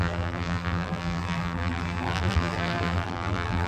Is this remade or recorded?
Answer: remade